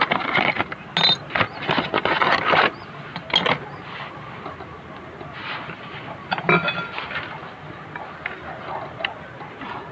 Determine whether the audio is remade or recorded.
recorded